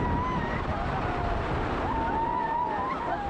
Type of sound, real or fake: real